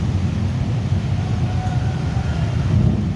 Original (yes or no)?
yes